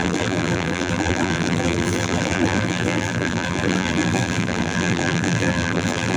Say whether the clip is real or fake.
fake